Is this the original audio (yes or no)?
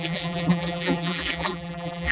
no